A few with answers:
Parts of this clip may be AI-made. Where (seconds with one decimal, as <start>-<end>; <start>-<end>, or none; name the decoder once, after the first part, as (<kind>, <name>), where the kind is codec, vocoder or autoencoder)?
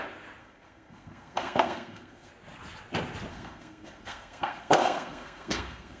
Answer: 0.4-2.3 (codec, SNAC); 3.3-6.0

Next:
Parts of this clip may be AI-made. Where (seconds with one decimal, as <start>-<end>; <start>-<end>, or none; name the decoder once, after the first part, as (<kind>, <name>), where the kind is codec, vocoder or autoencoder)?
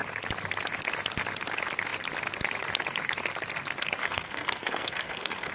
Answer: 4.0-5.5 (codec, SNAC)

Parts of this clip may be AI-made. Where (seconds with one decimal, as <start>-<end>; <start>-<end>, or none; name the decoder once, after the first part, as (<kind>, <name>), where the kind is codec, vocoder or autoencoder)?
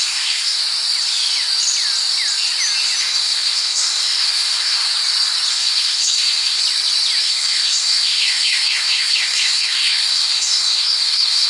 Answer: 0.0-0.6 (codec, SNAC); 3.0-4.9; 5.5-6.6; 7.2-11.5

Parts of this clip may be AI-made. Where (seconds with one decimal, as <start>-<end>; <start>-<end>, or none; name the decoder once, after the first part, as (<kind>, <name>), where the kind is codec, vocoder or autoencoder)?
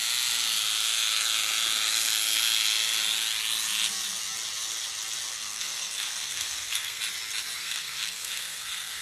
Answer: 5.3-7.0 (codec, SNAC); 7.6-9.0